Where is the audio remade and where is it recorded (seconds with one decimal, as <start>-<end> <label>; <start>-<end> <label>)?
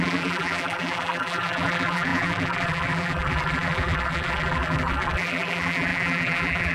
0.0-6.7 remade